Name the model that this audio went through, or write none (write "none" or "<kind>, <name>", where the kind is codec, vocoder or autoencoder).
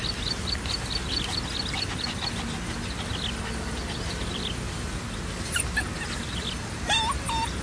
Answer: none